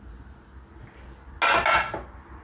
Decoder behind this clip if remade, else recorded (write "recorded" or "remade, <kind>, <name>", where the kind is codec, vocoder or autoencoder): recorded